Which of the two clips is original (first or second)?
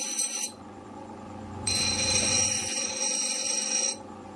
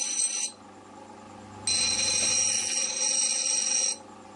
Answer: second